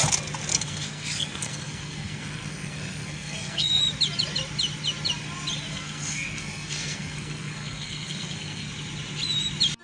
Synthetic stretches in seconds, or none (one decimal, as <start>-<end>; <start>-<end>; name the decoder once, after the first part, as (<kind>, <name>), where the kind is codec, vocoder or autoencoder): 0.5-3.8 (codec, SNAC); 5.7-8.7